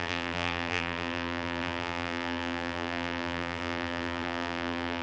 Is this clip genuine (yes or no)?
no